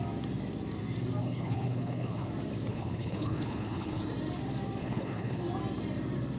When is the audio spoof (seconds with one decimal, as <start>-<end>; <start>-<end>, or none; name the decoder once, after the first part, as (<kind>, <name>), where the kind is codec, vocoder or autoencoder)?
1.2-2.3 (codec, HILCodec); 2.7-4.0; 4.8-5.4